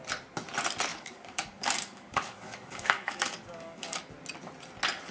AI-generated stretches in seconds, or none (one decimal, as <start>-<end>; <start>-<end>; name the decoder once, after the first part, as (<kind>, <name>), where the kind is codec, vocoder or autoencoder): 0.9-4.0 (codec, DAC)